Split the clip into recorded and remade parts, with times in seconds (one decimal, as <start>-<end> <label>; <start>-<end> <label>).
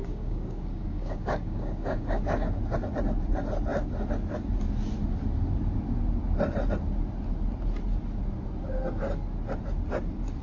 0.0-2.6 remade; 2.6-10.4 recorded